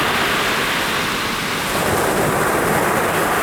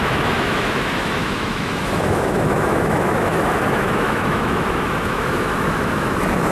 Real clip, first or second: first